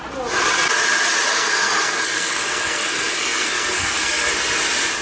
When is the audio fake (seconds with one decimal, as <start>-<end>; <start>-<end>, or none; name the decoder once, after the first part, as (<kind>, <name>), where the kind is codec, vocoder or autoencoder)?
1.3-4.3 (codec, SNAC)